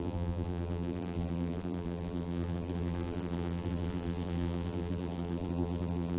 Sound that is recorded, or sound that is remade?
remade